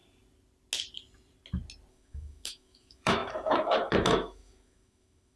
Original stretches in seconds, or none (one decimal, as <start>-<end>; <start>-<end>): 0.0-1.9